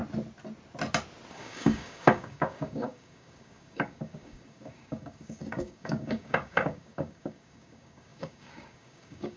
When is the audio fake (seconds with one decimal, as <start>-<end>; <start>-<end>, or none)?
1.3-9.4